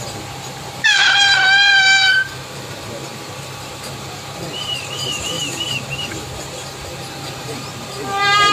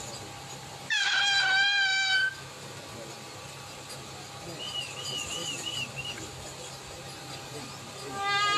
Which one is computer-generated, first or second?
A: first